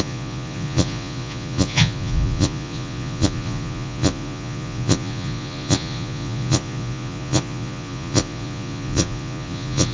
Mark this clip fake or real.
fake